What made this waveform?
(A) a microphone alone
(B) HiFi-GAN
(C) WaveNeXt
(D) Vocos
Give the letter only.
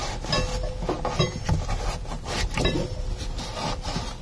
A